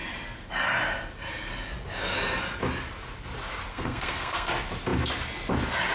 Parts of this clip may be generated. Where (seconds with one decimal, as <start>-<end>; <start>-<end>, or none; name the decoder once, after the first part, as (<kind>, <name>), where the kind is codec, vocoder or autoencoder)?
3.7-4.5 (codec, SNAC)